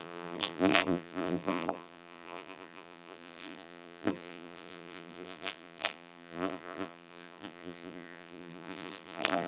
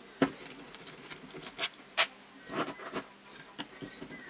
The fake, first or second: first